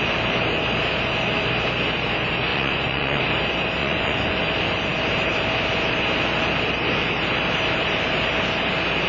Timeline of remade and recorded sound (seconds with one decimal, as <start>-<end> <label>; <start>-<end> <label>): 0.0-2.5 recorded; 2.5-3.2 remade; 3.2-3.8 recorded; 3.8-4.4 remade; 4.4-9.1 recorded

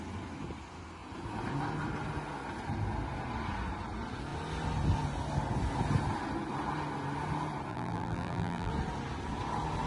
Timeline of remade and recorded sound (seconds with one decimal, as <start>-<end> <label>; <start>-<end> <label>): 0.0-7.7 recorded; 7.7-8.7 remade; 8.7-9.9 recorded

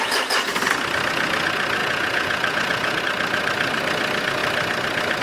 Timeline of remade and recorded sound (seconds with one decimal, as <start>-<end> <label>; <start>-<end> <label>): 0.0-1.8 recorded; 1.8-3.0 remade; 3.0-5.2 recorded

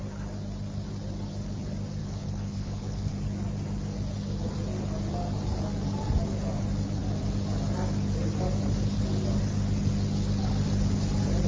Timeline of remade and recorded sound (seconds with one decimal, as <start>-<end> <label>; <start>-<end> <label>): 0.0-2.0 recorded; 2.0-3.1 remade; 3.1-11.5 recorded

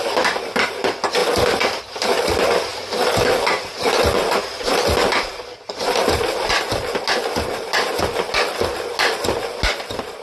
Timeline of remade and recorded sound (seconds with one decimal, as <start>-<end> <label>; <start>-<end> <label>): 0.0-10.2 recorded

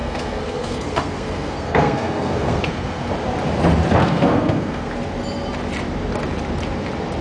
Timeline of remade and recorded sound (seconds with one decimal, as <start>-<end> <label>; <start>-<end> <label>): 0.0-3.1 remade; 3.1-4.0 recorded; 4.0-4.9 remade; 4.9-7.2 recorded

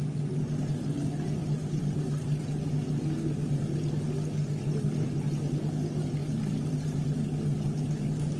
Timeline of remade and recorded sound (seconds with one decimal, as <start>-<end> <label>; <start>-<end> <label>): 0.0-8.4 recorded

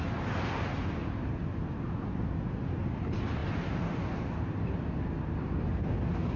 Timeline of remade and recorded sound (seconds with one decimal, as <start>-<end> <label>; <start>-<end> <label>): 0.0-6.4 recorded